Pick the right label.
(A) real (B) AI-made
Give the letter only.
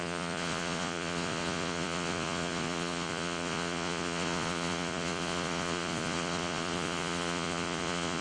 B